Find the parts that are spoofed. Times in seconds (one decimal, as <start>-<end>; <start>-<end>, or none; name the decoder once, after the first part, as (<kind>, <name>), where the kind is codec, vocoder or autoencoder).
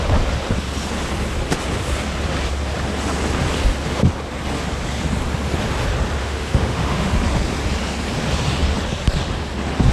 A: 6.2-7.1 (autoencoder, DAC-VAE)